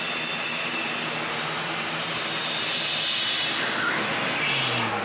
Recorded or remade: recorded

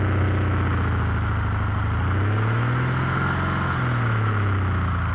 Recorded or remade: recorded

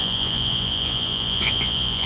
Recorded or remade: remade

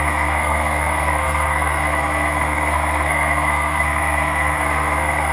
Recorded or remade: remade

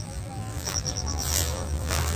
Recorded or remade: remade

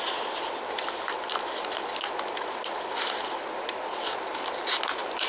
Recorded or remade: recorded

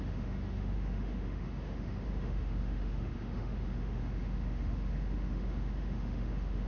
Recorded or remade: remade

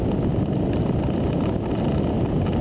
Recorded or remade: recorded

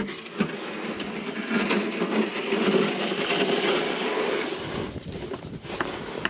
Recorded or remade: recorded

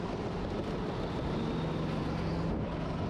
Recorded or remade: recorded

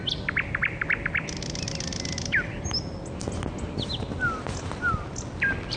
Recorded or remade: recorded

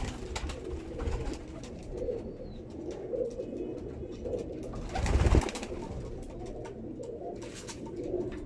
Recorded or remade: recorded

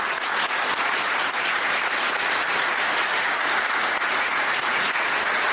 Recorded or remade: remade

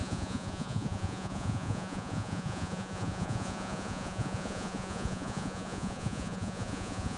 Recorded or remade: remade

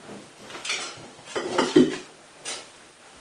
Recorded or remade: recorded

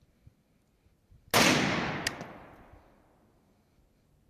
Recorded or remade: recorded